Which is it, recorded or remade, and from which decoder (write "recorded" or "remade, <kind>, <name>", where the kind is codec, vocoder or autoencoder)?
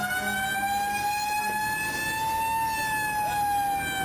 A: recorded